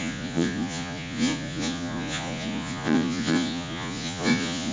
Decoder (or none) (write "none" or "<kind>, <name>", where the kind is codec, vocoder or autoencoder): vocoder, Vocos